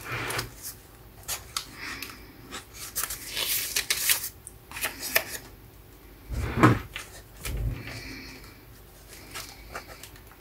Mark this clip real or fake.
real